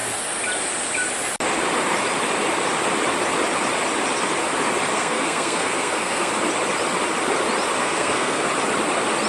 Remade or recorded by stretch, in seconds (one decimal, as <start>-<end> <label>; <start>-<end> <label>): 0.0-4.9 recorded; 4.9-6.3 remade; 6.3-7.8 recorded; 7.8-8.5 remade; 8.5-9.3 recorded